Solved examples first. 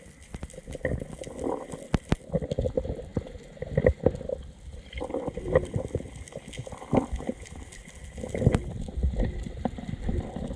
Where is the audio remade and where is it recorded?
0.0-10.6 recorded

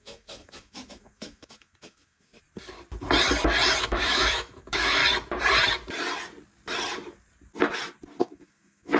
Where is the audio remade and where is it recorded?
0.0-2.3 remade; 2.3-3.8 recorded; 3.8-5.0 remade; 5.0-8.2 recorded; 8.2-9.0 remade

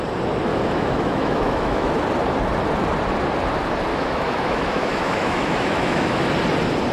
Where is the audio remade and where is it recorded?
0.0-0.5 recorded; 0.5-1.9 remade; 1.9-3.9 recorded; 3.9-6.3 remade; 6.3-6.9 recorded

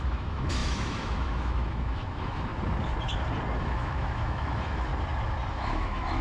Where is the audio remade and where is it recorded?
0.0-2.5 remade; 2.5-3.6 recorded; 3.6-4.9 remade; 4.9-5.5 recorded; 5.5-6.2 remade

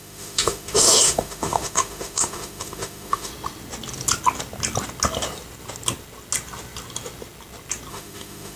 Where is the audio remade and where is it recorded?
0.0-3.3 remade; 3.3-7.9 recorded; 7.9-8.6 remade

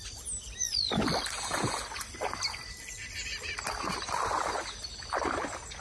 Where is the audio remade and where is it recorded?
0.0-5.8 recorded